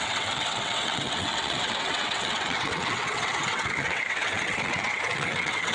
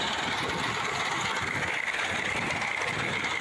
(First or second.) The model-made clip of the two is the first